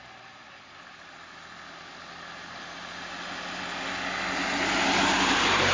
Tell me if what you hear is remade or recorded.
recorded